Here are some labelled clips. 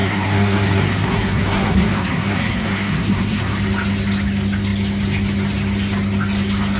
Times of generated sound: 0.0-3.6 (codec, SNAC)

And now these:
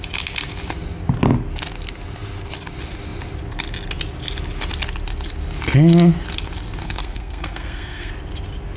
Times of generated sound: 6.8-8.1 (codec, SNAC)

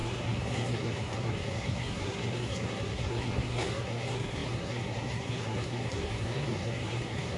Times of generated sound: 0.0-7.4 (codec, SNAC)